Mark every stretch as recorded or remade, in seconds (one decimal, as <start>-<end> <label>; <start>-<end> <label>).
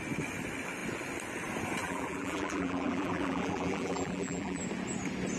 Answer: 0.0-1.8 recorded; 1.8-4.6 remade; 4.6-5.4 recorded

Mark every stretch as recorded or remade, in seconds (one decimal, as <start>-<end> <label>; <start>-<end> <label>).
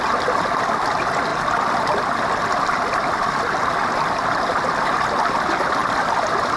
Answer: 0.0-5.8 recorded; 5.8-6.6 remade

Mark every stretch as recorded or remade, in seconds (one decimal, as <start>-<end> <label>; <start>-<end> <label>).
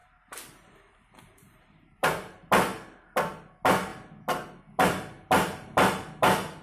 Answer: 0.0-2.5 remade; 2.5-6.6 recorded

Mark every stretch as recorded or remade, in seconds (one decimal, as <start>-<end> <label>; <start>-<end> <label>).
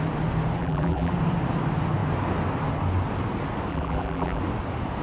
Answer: 0.0-0.6 recorded; 0.6-1.1 remade; 1.1-3.7 recorded; 3.7-4.4 remade; 4.4-5.0 recorded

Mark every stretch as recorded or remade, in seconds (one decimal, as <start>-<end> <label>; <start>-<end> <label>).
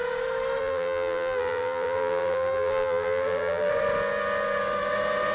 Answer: 0.0-0.6 recorded; 0.6-3.7 remade; 3.7-5.3 recorded